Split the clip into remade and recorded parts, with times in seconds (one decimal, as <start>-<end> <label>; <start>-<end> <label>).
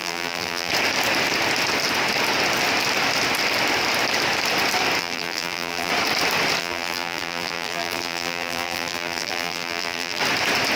0.0-0.7 remade; 0.7-5.0 recorded; 5.0-5.9 remade; 5.9-6.6 recorded; 6.6-10.2 remade; 10.2-10.8 recorded